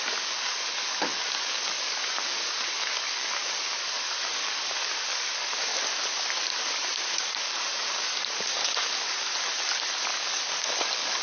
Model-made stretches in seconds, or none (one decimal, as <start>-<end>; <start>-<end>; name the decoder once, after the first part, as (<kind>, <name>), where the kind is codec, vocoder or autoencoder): 0.0-5.7 (codec, DAC); 7.1-9.3; 10.1-11.2